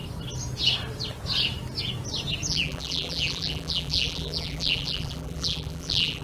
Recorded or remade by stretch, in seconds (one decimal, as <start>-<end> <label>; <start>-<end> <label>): 0.0-2.5 recorded; 2.5-6.2 remade

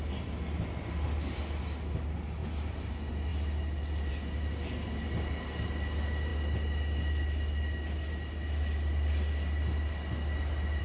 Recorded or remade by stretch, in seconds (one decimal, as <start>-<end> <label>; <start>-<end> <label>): 0.0-2.4 recorded; 2.4-2.9 remade; 2.9-10.8 recorded

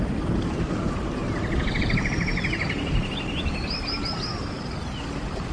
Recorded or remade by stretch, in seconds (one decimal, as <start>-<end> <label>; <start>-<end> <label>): 0.0-1.2 remade; 1.2-1.8 recorded; 1.8-2.3 remade; 2.3-5.1 recorded; 5.1-5.5 remade